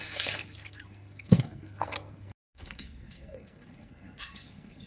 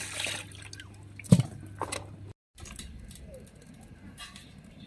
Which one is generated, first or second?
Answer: first